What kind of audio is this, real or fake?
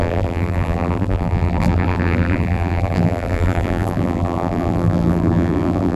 fake